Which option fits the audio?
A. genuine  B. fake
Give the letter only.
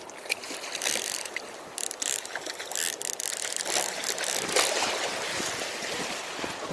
A